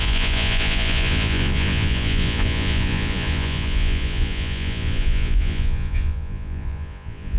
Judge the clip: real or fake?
fake